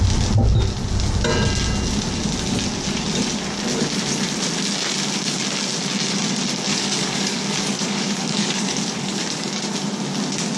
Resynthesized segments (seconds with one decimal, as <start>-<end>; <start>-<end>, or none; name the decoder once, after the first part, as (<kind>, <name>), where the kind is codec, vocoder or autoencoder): 6.7-9.5 (codec, DAC)